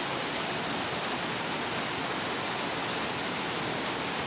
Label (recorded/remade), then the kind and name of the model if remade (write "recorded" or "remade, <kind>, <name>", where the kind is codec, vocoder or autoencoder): recorded